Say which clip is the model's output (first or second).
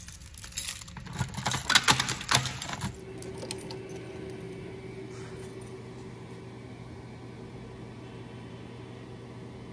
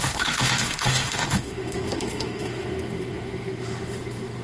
second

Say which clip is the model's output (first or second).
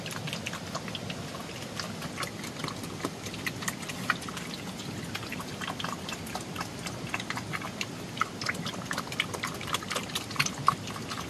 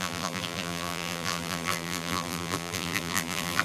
second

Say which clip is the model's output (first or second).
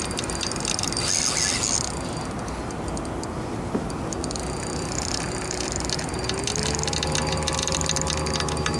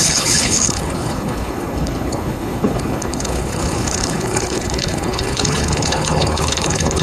second